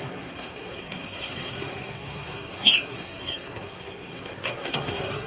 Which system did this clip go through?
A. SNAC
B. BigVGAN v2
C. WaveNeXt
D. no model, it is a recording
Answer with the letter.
A